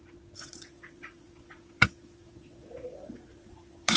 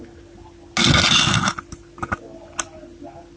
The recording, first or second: second